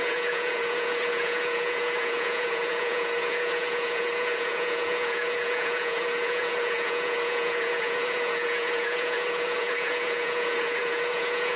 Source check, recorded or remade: remade